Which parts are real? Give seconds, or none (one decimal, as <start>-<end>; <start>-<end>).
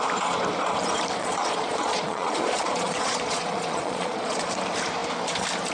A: 0.0-1.2; 4.5-5.7